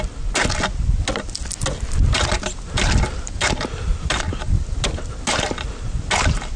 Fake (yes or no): no